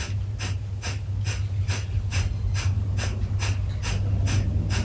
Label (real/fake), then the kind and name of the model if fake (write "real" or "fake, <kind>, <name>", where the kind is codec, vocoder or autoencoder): real